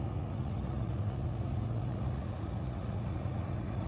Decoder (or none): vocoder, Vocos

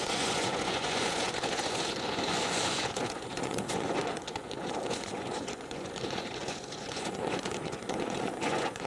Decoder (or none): vocoder, Vocos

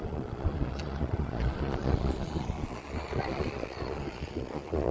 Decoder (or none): vocoder, Vocos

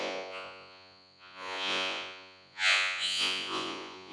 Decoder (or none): vocoder, Vocos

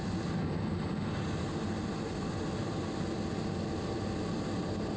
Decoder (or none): none